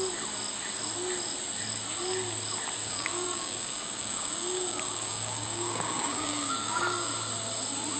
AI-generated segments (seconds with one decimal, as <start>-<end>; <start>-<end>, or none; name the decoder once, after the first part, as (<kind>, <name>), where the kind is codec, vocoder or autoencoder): 2.8-7.1 (codec, DAC)